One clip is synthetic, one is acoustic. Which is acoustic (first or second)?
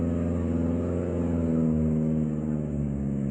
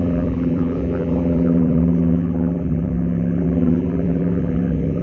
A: first